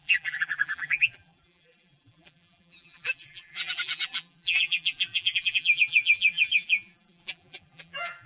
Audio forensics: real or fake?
fake